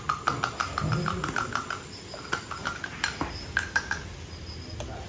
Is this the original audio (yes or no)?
yes